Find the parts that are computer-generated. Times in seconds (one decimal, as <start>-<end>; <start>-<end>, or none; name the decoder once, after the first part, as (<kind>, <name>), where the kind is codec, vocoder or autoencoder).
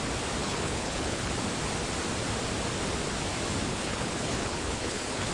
0.4-1.3 (codec, HILCodec); 3.7-5.3